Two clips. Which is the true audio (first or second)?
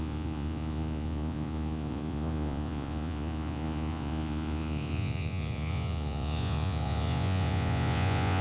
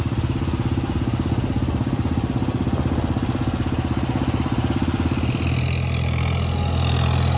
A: second